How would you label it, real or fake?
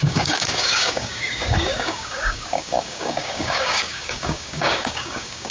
fake